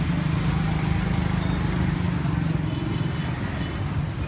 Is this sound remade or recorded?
recorded